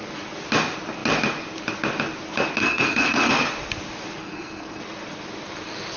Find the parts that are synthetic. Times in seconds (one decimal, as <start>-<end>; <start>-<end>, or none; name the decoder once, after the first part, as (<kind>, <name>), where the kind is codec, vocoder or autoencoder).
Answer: 2.6-3.3 (codec, SNAC); 4.2-4.8